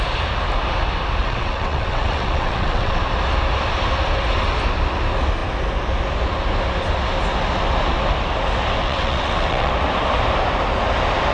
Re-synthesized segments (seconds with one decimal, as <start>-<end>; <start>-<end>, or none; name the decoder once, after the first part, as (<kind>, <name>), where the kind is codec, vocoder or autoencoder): 1.2-3.0 (vocoder, WaveNeXt); 8.8-9.7